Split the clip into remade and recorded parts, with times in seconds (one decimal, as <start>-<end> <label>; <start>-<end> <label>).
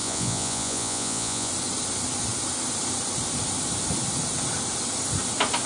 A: 0.0-1.5 remade; 1.5-5.7 recorded